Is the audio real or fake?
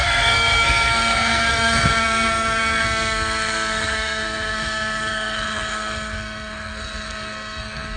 fake